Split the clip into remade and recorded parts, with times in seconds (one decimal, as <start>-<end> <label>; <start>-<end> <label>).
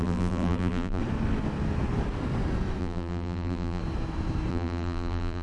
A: 0.0-1.0 remade; 1.0-2.8 recorded; 2.8-3.8 remade; 3.8-4.5 recorded; 4.5-5.4 remade